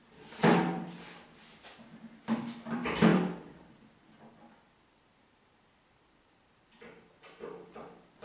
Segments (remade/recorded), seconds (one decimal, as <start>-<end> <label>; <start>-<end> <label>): 0.0-3.1 recorded; 3.1-4.7 remade; 4.7-8.2 recorded